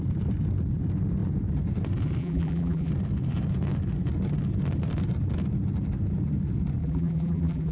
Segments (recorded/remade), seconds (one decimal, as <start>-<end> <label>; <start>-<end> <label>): 0.0-2.2 recorded; 2.2-2.9 remade; 2.9-6.8 recorded; 6.8-7.7 remade